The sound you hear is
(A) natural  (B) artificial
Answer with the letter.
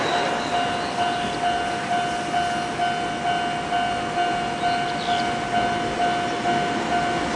A